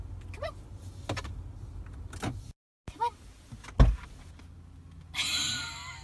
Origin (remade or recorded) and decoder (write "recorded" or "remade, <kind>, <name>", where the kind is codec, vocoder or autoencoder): recorded